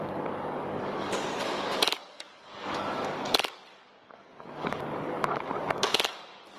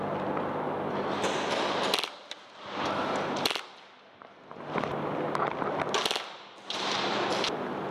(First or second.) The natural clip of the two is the second